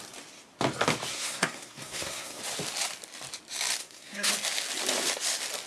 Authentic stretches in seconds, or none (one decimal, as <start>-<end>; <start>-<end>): 0.0-1.1; 2.4-3.8; 4.3-5.7